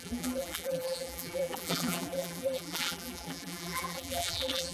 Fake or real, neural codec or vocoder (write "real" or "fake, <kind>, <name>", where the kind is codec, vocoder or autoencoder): fake, vocoder, BigVGAN v2